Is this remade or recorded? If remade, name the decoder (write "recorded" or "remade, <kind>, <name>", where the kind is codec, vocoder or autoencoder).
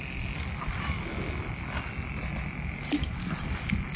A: recorded